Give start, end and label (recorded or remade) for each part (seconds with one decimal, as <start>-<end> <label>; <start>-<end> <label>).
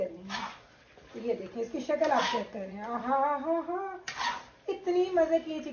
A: 0.0-2.2 recorded; 2.2-3.0 remade; 3.0-5.7 recorded